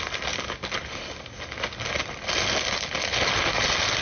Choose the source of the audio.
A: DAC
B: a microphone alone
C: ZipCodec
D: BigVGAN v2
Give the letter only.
B